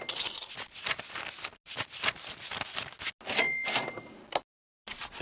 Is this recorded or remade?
recorded